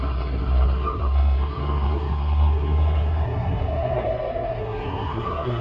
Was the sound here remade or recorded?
remade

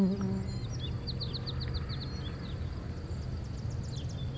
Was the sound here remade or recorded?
recorded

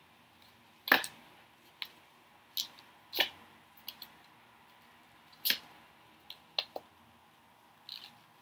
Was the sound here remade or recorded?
recorded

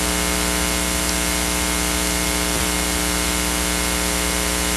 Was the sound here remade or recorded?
recorded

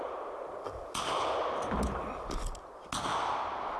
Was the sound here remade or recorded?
recorded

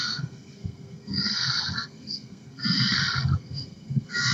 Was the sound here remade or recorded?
remade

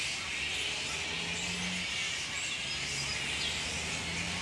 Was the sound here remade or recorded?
recorded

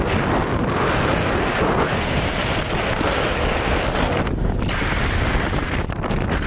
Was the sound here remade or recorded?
recorded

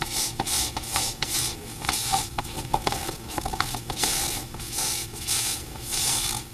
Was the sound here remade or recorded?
remade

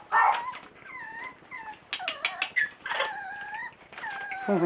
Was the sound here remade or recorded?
recorded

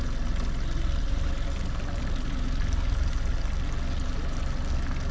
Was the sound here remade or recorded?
recorded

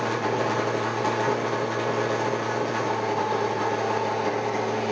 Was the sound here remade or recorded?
recorded